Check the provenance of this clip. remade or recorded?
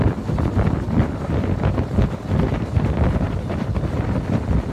recorded